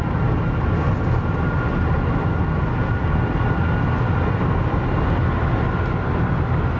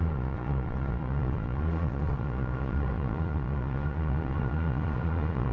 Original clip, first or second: first